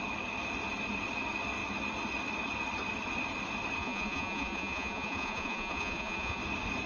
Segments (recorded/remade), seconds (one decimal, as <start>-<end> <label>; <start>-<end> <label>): 0.0-3.8 recorded; 3.8-6.4 remade; 6.4-6.9 recorded

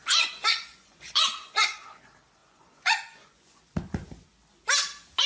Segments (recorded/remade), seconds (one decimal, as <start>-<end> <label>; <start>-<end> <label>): 0.0-2.0 remade; 2.0-2.4 recorded; 2.4-3.6 remade; 3.6-5.3 recorded

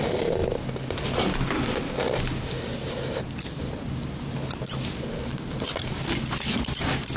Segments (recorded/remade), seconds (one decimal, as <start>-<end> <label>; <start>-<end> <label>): 0.0-0.4 remade; 0.4-3.6 recorded; 3.6-4.4 remade; 4.4-5.4 recorded; 5.4-7.2 remade

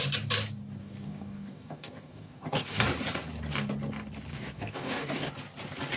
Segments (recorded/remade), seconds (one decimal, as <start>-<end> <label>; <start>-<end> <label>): 0.0-0.8 recorded; 0.8-2.8 remade; 2.8-4.3 recorded; 4.3-5.3 remade; 5.3-6.0 recorded

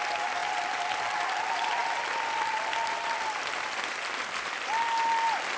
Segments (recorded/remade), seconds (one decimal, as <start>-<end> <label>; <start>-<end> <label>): 0.0-5.6 recorded

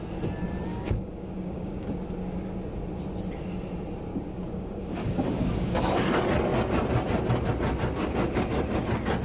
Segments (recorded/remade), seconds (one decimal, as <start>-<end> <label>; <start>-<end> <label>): 0.0-0.7 recorded; 0.7-1.9 remade; 1.9-4.1 recorded; 4.1-6.1 remade; 6.1-9.2 recorded

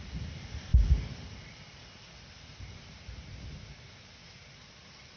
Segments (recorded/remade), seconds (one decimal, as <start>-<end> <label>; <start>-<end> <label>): 0.0-5.2 remade

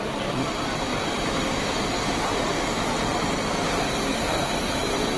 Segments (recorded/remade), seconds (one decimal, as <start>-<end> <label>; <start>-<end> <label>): 0.0-5.2 remade